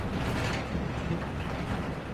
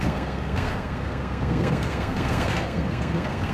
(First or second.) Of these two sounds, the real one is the first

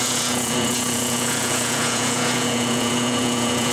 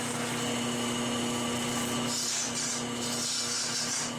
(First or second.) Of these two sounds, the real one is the second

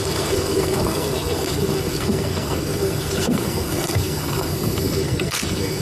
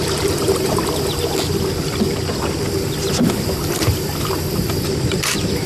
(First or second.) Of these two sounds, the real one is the second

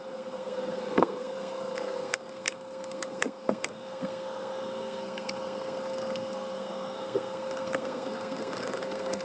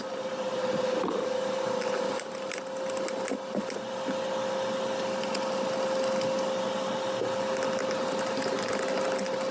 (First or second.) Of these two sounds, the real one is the second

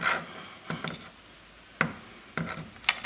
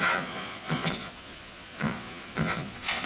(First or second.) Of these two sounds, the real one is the first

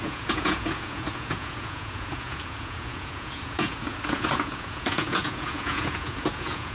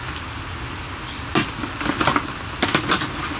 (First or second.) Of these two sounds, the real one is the second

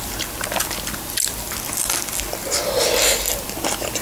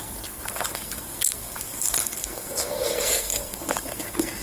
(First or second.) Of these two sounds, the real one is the first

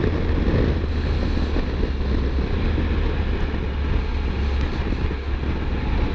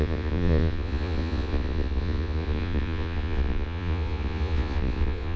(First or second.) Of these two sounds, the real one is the first